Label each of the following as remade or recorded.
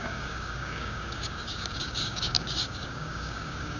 remade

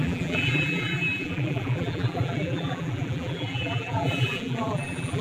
remade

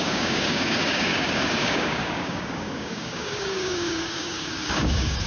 remade